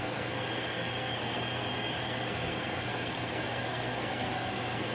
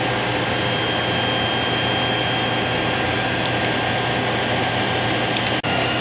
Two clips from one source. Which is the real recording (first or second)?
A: second